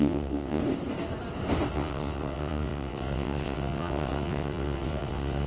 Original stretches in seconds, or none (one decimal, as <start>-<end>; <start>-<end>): 0.6-1.7